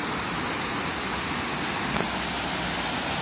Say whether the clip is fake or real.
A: real